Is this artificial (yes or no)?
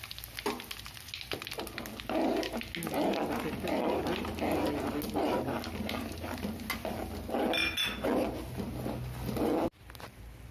no